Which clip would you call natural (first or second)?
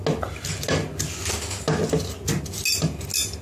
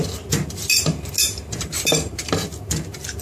first